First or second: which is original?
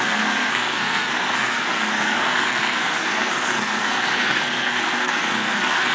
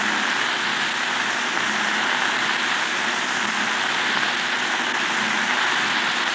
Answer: second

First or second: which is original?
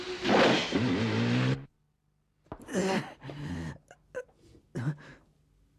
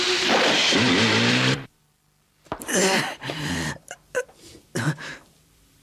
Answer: first